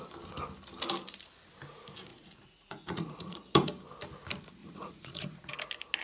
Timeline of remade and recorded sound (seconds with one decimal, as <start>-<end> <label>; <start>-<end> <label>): 0.0-2.1 recorded; 2.1-3.4 remade; 3.4-4.6 recorded; 4.6-5.5 remade; 5.5-6.0 recorded